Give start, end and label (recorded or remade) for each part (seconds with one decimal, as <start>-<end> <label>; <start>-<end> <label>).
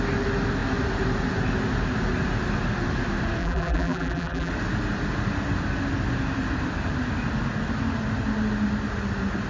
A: 0.0-3.4 recorded; 3.4-4.5 remade; 4.5-9.5 recorded